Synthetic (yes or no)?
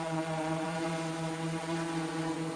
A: yes